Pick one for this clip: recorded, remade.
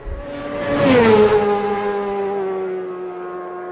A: recorded